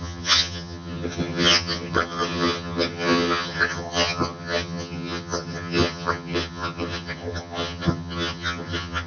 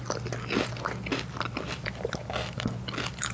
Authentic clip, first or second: second